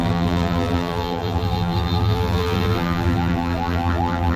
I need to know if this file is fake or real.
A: fake